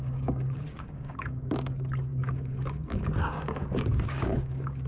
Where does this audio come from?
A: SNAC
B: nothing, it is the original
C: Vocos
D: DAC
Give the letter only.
D